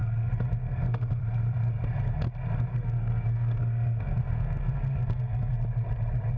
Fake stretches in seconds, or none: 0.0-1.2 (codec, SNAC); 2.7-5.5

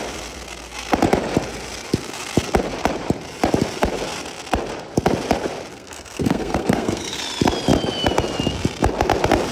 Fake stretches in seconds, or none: 5.7-7.2 (codec, SNAC)